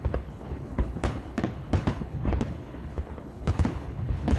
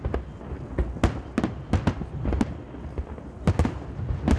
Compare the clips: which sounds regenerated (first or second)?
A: first